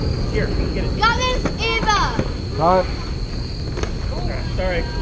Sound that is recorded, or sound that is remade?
recorded